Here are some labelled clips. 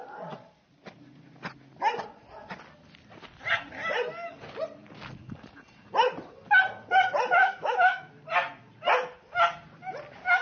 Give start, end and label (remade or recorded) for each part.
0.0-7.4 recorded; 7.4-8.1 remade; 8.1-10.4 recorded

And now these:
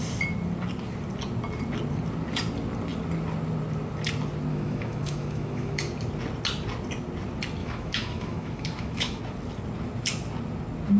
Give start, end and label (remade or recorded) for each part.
0.0-4.5 recorded; 4.5-5.8 remade; 5.8-7.6 recorded; 7.6-9.2 remade; 9.2-11.0 recorded